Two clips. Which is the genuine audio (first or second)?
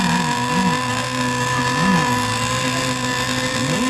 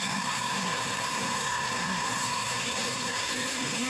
first